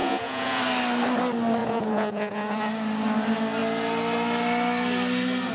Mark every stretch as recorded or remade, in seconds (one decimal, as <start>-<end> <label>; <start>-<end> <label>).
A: 0.0-0.6 remade; 0.6-1.6 recorded; 1.6-2.7 remade; 2.7-5.5 recorded